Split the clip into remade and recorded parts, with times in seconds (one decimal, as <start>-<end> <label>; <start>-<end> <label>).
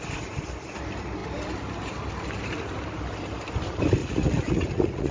0.0-4.0 recorded; 4.0-5.1 remade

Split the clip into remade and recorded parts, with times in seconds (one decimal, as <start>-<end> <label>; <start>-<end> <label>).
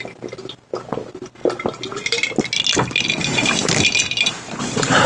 0.0-5.1 recorded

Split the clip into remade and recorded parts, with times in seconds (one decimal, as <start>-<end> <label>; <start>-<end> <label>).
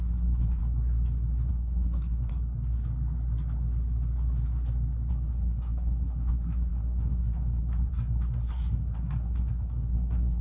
0.0-0.6 remade; 0.6-1.5 recorded; 1.5-2.3 remade; 2.3-5.1 recorded; 5.1-10.4 remade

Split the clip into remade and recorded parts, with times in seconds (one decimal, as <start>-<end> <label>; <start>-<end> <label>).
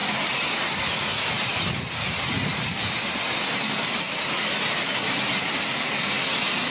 0.0-4.8 recorded; 4.8-5.5 remade; 5.5-6.7 recorded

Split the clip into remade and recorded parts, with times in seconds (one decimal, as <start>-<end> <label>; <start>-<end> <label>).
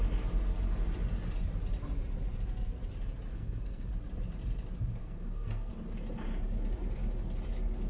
0.0-3.3 recorded; 3.3-3.9 remade; 3.9-5.0 recorded; 5.0-5.7 remade; 5.7-7.9 recorded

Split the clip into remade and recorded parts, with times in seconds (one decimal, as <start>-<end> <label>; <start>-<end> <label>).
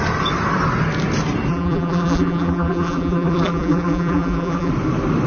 0.0-1.5 recorded; 1.5-4.7 remade; 4.7-5.3 recorded